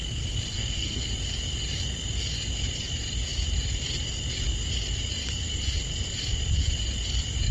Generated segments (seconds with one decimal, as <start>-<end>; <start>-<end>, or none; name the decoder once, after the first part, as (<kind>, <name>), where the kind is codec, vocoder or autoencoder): 0.5-1.1 (codec, SNAC)